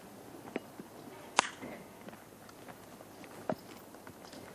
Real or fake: real